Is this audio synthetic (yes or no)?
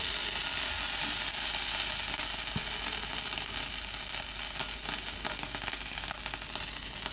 no